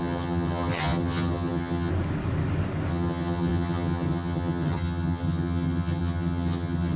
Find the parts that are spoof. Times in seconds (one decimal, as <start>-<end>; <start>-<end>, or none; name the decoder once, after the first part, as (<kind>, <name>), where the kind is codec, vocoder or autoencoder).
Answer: 0.0-1.9 (vocoder, HiFi-GAN); 2.9-7.0

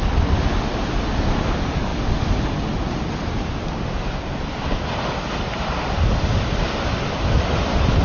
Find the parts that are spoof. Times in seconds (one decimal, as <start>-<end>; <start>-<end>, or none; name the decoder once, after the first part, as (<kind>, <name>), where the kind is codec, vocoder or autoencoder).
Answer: none

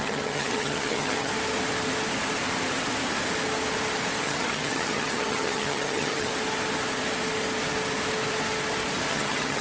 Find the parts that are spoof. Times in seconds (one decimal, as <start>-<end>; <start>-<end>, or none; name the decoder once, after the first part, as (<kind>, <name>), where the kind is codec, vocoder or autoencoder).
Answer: 0.0-1.3 (vocoder, HiFi-GAN); 4.2-6.3; 9.1-9.6